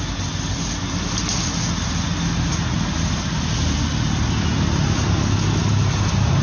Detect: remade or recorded recorded